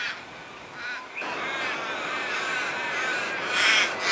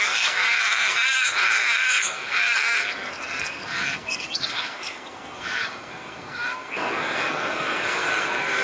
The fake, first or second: second